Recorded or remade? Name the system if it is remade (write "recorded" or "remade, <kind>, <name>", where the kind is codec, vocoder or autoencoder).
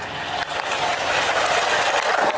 recorded